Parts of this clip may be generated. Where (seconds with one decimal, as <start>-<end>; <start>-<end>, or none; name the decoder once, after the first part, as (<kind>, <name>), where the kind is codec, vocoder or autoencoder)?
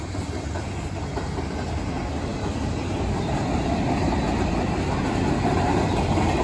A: none